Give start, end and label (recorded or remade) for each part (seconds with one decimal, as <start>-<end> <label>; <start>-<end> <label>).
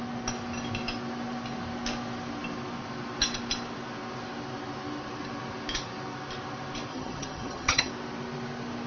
0.0-6.9 recorded; 6.9-7.9 remade; 7.9-8.9 recorded